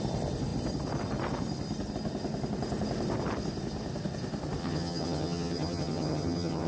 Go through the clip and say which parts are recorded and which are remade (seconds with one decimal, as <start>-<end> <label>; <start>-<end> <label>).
0.0-4.6 recorded; 4.6-6.7 remade